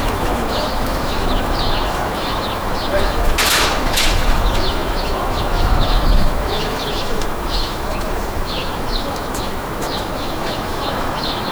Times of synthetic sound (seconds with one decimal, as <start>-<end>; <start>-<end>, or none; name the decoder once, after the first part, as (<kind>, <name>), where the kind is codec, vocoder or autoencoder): 0.0-11.5 (autoencoder, DAC-VAE)